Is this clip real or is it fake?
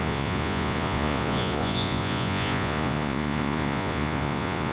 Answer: fake